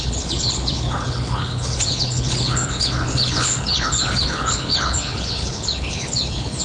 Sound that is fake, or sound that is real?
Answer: fake